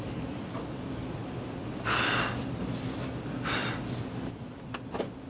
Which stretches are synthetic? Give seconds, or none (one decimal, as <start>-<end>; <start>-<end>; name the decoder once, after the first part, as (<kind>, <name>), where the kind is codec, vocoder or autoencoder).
0.0-3.6 (vocoder, BigVGAN v2); 4.3-5.3